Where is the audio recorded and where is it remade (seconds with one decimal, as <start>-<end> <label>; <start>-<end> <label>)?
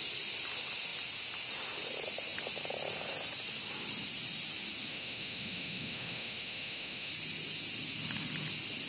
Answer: 0.0-4.9 recorded; 4.9-7.1 remade; 7.1-8.9 recorded